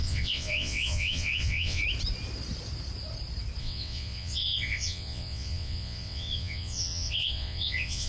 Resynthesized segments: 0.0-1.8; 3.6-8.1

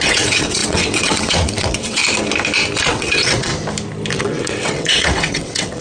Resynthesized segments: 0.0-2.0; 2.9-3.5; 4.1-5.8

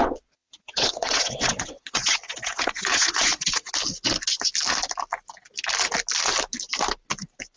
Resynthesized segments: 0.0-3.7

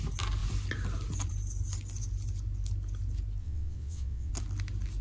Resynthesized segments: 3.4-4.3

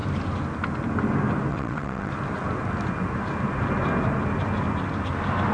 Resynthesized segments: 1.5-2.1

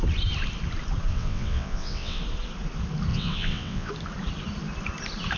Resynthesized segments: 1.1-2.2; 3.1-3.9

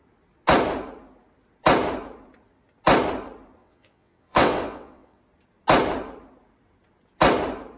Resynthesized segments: 3.6-5.2